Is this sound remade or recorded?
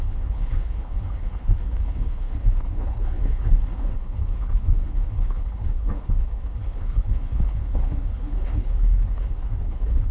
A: remade